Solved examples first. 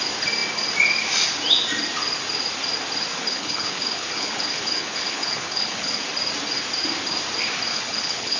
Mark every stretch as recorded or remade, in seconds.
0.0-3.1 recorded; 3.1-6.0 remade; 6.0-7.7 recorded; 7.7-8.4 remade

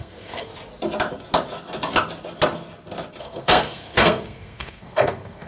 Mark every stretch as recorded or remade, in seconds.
0.0-0.5 remade; 0.5-3.2 recorded; 3.2-5.5 remade

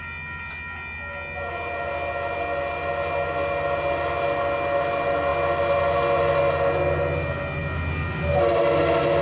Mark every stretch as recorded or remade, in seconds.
0.0-9.2 recorded